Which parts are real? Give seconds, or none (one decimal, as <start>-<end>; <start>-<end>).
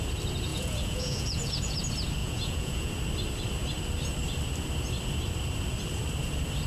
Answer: 0.0-0.5; 1.8-2.2; 2.9-6.7